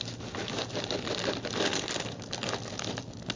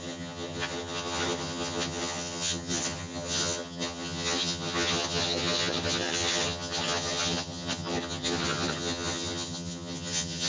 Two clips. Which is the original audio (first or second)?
first